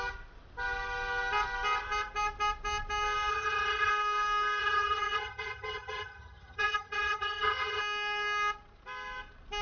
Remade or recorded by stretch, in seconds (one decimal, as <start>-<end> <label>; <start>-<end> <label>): 0.0-3.3 recorded; 3.3-3.9 remade; 3.9-4.6 recorded; 4.6-7.8 remade; 7.8-9.6 recorded